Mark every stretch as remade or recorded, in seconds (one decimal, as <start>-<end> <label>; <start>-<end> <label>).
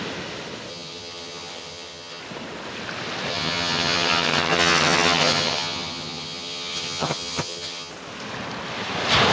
0.0-0.7 recorded; 0.7-2.2 remade; 2.2-3.3 recorded; 3.3-7.9 remade; 7.9-9.3 recorded